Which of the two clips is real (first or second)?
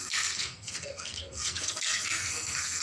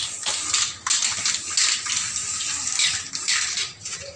second